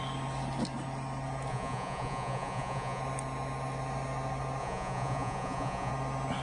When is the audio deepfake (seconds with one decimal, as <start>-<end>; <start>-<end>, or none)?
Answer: 1.5-3.0; 4.6-5.9